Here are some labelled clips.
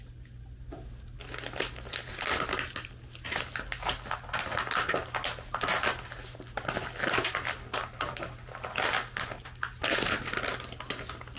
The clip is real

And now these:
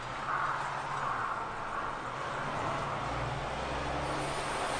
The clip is real